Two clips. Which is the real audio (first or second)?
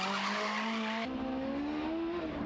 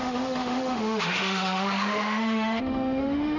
first